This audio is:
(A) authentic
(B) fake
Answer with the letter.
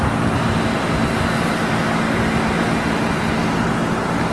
A